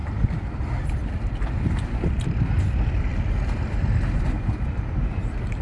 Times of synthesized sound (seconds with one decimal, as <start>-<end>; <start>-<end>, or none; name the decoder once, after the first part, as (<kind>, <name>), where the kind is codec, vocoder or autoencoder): 0.0-5.6 (vocoder, BigVGAN v2)